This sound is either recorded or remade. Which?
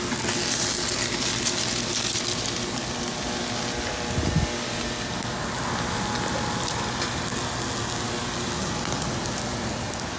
recorded